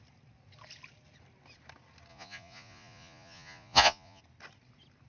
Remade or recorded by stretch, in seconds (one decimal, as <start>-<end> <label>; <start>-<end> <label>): 0.0-2.1 recorded; 2.1-4.2 remade; 4.2-5.1 recorded